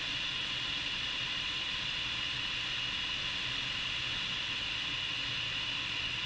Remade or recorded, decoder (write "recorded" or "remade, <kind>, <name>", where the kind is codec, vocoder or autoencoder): recorded